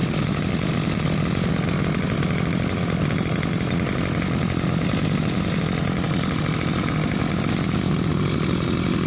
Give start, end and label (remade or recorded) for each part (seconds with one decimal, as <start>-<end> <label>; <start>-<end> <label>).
0.0-9.1 recorded